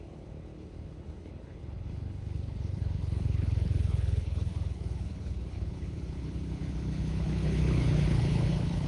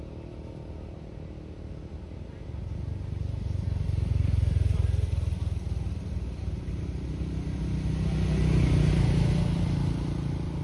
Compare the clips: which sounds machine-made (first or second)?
first